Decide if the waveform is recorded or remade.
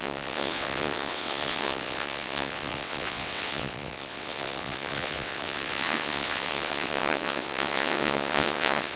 remade